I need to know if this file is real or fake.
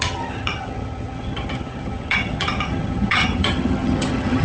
fake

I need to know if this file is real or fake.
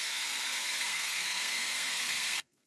fake